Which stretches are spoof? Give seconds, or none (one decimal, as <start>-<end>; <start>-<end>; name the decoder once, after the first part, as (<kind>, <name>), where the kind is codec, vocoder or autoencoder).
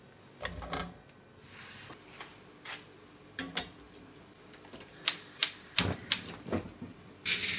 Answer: 2.3-4.1 (vocoder, BigVGAN v2); 5.4-6.1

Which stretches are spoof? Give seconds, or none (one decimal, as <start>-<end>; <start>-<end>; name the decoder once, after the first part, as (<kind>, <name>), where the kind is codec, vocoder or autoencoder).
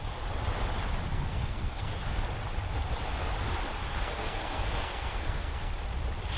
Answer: 1.1-2.2 (codec, SNAC); 3.9-5.7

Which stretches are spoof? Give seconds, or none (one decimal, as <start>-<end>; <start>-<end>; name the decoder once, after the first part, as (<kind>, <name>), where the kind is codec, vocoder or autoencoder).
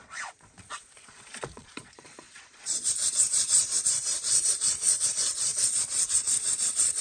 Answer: 0.0-7.0 (vocoder, Vocos)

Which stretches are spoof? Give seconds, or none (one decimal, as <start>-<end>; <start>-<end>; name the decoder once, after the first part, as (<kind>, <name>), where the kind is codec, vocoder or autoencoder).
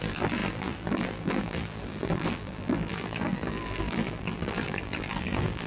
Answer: 0.0-5.7 (vocoder, BigVGAN v2)